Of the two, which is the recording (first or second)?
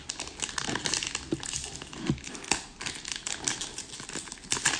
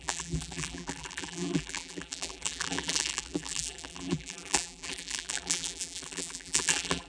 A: first